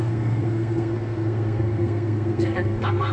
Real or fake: fake